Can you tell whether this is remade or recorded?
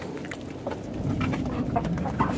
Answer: recorded